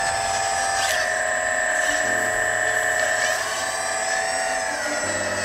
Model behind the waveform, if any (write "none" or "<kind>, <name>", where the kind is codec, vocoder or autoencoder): none